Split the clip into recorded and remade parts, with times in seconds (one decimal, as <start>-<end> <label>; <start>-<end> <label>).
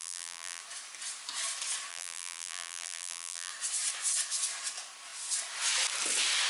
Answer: 0.0-0.6 remade; 0.6-1.9 recorded; 1.9-3.5 remade; 3.5-6.5 recorded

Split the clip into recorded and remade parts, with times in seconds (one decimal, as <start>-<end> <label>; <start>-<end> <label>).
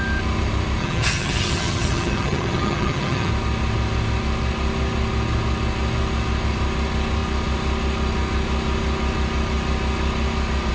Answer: 0.0-0.8 recorded; 0.8-3.3 remade; 3.3-10.7 recorded